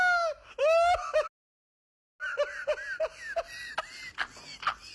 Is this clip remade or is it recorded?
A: recorded